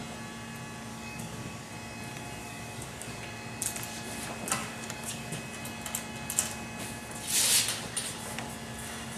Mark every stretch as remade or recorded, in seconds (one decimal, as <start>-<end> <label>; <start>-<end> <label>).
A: 0.0-0.9 recorded; 0.9-1.7 remade; 1.7-2.4 recorded; 2.4-3.2 remade; 3.2-4.6 recorded; 4.6-5.3 remade; 5.3-9.2 recorded